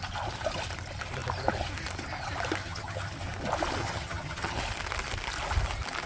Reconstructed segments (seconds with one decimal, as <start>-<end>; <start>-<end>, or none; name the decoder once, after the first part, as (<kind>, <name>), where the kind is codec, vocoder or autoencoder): 2.6-3.1 (vocoder, HiFi-GAN); 3.8-4.6

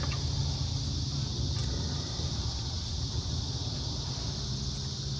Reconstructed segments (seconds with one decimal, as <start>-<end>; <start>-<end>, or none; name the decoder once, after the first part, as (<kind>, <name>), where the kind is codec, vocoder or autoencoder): none

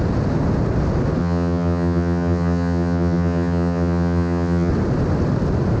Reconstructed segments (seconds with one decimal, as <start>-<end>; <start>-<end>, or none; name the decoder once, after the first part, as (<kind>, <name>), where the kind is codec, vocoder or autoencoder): 1.2-4.7 (vocoder, HiFi-GAN)

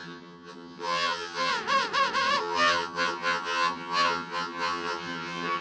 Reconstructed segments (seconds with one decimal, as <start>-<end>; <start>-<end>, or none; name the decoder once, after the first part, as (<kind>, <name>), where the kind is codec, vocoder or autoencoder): 0.0-1.5 (vocoder, HiFi-GAN); 2.4-5.6

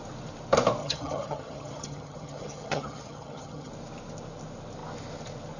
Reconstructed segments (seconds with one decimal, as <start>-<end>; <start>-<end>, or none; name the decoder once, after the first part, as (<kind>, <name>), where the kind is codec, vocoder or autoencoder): 0.8-3.7 (vocoder, HiFi-GAN)